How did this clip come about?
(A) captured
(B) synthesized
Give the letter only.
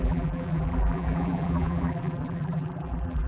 B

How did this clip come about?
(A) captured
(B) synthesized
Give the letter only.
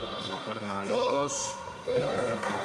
B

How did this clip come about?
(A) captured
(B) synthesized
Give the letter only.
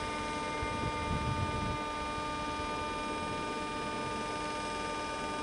A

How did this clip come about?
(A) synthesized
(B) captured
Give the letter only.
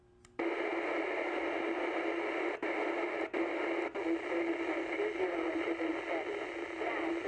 B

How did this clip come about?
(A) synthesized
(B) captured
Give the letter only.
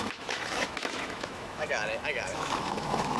A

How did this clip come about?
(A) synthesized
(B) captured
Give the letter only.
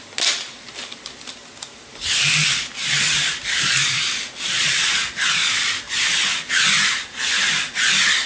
B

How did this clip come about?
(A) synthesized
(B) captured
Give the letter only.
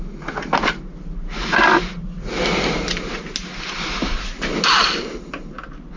B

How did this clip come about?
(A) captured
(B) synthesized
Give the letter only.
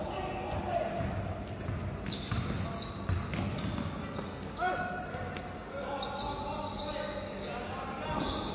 A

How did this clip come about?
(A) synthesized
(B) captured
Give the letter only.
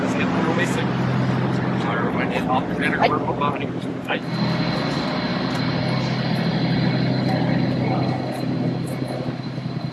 B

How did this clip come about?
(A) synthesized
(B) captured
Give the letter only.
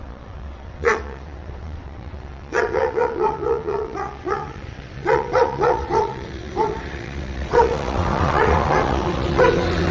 A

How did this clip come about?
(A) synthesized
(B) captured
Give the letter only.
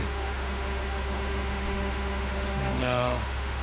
A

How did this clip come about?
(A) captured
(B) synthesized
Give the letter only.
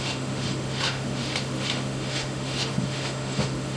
B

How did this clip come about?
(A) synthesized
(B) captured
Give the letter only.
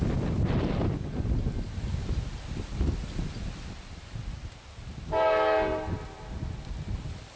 B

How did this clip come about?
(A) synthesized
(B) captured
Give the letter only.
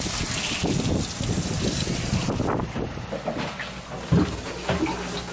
B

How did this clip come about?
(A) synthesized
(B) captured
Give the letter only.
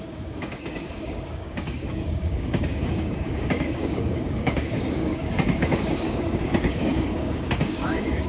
A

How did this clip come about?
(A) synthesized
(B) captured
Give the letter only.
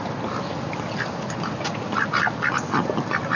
B